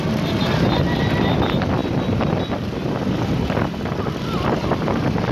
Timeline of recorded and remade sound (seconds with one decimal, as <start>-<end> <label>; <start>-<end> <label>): 0.0-5.3 recorded

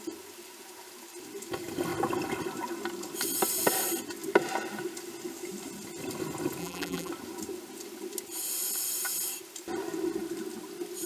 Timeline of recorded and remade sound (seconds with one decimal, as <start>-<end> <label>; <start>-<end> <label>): 0.0-6.6 recorded; 6.6-7.1 remade; 7.1-11.1 recorded

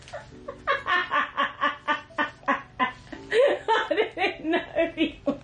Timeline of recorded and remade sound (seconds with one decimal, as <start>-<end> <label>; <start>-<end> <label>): 0.0-5.4 recorded

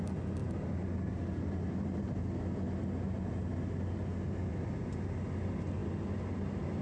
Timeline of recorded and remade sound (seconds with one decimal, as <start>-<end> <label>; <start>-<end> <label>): 0.0-6.8 recorded

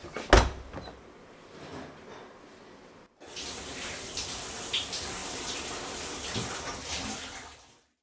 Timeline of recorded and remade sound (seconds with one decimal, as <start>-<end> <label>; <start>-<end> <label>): 0.0-5.2 recorded; 5.2-6.0 remade; 6.0-8.0 recorded